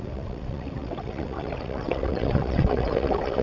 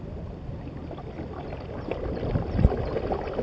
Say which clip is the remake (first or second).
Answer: first